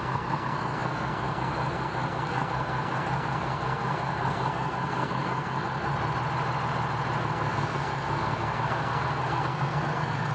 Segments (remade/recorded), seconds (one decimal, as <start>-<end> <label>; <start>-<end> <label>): 0.0-5.9 remade; 5.9-7.2 recorded; 7.2-10.3 remade